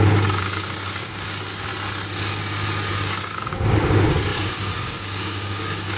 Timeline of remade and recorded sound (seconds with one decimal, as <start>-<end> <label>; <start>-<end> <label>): 0.0-1.7 remade; 1.7-2.9 recorded; 2.9-6.0 remade